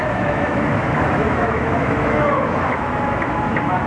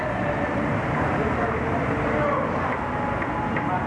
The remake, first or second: first